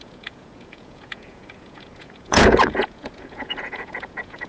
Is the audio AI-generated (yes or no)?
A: yes